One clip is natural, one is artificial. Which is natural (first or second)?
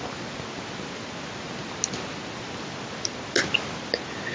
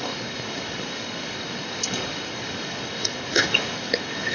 first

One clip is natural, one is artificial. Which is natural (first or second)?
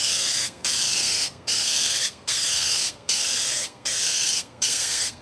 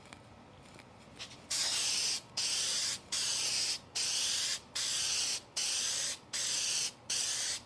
second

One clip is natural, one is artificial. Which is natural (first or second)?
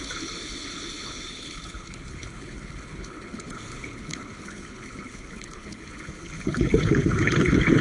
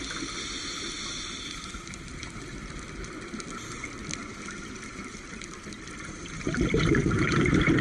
second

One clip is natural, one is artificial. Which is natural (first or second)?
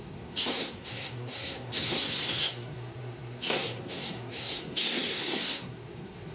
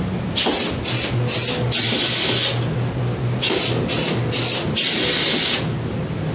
second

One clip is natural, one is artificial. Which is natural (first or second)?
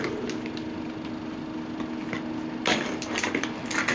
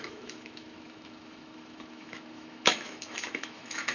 first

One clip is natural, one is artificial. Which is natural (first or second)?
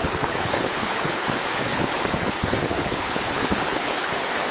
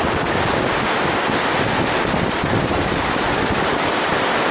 second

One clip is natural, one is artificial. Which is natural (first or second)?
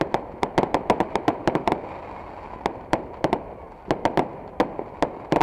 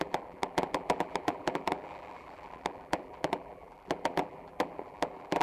first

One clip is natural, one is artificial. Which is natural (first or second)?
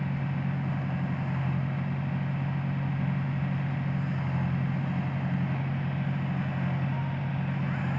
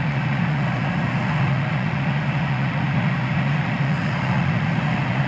first